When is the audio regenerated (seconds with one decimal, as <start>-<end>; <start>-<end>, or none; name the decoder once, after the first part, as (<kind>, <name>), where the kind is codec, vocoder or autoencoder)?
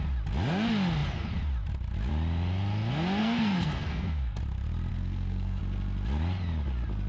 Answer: 3.2-4.4 (codec, SNAC); 4.9-5.6